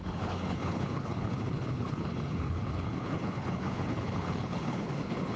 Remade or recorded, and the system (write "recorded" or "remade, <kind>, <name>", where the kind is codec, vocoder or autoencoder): remade, codec, HILCodec